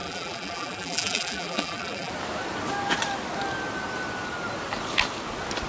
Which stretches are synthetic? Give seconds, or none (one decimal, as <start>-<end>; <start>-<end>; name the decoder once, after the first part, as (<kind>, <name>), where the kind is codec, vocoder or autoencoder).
0.0-2.1 (vocoder, BigVGAN v2)